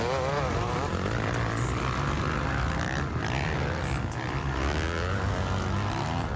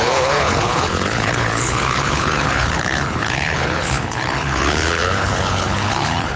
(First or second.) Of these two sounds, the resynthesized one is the second